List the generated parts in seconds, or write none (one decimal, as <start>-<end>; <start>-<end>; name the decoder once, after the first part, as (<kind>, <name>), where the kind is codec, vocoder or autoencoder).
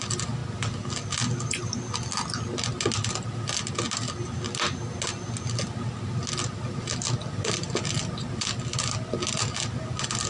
none